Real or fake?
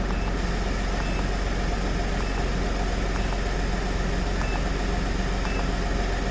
real